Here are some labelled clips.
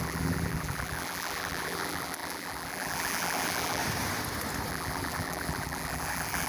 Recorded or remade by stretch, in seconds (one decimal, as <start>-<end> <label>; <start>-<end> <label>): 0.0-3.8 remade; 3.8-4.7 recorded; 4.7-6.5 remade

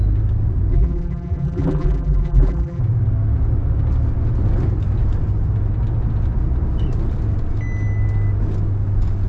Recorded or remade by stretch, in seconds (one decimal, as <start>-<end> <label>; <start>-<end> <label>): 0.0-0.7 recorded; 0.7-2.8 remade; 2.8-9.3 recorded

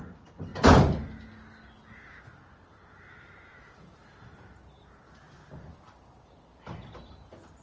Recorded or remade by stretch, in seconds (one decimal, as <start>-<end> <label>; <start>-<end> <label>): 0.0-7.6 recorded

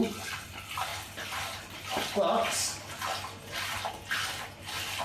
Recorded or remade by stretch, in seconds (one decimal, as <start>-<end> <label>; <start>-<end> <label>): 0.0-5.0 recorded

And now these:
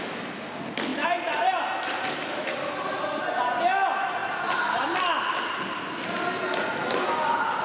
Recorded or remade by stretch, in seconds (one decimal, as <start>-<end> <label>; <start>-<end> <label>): 0.0-0.9 recorded; 0.9-2.7 remade; 2.7-4.2 recorded; 4.2-6.1 remade; 6.1-7.6 recorded

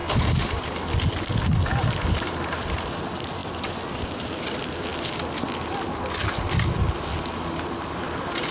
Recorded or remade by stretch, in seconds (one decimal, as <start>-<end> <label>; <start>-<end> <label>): 0.0-1.8 recorded; 1.8-4.9 remade; 4.9-7.5 recorded; 7.5-8.5 remade

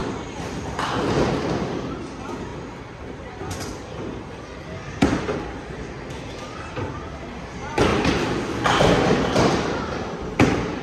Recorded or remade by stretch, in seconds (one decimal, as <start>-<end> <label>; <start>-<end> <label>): 0.0-2.5 recorded; 2.5-6.6 remade; 6.6-7.9 recorded; 7.9-9.5 remade; 9.5-10.8 recorded